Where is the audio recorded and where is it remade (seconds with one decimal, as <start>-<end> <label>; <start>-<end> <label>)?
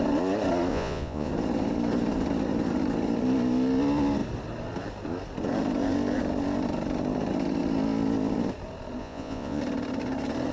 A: 0.0-0.7 recorded; 0.7-1.3 remade; 1.3-9.0 recorded; 9.0-9.6 remade; 9.6-10.5 recorded